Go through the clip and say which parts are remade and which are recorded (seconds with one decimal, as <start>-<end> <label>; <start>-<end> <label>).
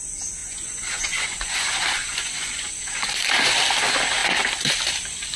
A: 0.0-0.4 recorded; 0.4-3.2 remade; 3.2-5.4 recorded